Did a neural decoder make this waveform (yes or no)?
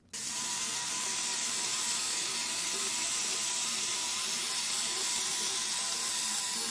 no